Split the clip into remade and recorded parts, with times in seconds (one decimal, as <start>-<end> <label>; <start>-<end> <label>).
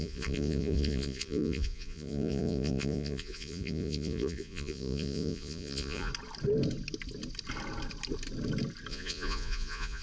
0.0-6.1 remade; 6.1-8.9 recorded; 8.9-10.0 remade